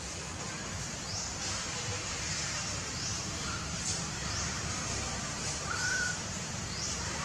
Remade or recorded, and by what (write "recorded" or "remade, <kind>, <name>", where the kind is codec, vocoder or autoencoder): remade, vocoder, BigVGAN v2